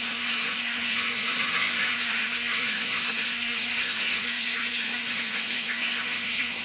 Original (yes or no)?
no